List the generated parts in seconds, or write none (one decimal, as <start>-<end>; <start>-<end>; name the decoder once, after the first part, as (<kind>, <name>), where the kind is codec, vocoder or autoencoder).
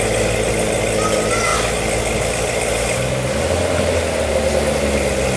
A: none